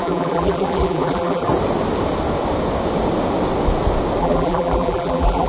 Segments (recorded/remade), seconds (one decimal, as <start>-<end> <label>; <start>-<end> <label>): 0.0-1.5 remade; 1.5-4.2 recorded; 4.2-5.5 remade